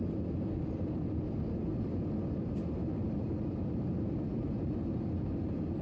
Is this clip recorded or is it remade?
remade